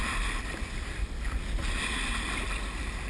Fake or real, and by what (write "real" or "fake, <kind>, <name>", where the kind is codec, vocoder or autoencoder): real